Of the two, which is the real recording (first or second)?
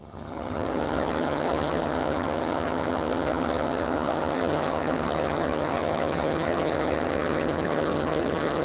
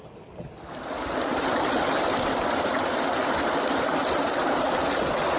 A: second